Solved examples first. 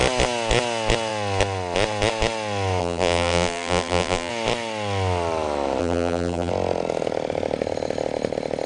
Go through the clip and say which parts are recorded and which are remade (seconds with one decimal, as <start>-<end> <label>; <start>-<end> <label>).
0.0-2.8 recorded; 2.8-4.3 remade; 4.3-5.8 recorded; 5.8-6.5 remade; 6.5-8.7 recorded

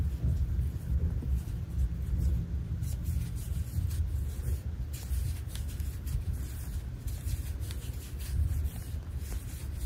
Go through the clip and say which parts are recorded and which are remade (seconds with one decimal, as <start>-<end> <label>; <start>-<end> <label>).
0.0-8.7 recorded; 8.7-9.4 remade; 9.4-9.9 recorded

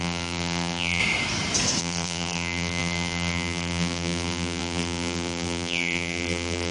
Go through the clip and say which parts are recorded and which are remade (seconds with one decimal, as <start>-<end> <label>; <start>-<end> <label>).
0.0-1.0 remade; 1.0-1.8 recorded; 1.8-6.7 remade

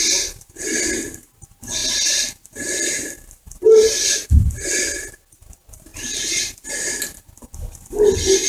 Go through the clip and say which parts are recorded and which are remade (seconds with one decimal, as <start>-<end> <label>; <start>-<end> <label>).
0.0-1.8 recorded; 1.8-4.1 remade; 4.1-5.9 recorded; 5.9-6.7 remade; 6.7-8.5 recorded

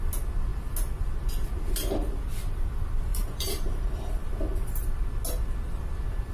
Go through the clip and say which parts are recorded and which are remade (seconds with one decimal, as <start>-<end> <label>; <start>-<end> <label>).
0.0-3.1 recorded; 3.1-4.4 remade; 4.4-6.3 recorded

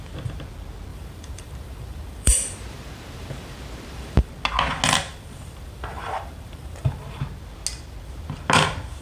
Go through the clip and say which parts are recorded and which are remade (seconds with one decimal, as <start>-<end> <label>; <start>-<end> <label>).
0.0-0.9 recorded; 0.9-4.3 remade; 4.3-5.1 recorded; 5.1-7.2 remade; 7.2-9.0 recorded

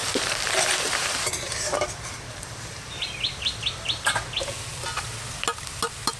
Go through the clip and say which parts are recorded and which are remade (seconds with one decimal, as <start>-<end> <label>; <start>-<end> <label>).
0.0-3.1 remade; 3.1-6.2 recorded

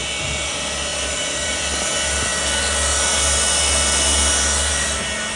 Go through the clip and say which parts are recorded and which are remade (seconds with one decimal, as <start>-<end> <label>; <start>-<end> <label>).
0.0-0.9 recorded; 0.9-1.5 remade; 1.5-5.4 recorded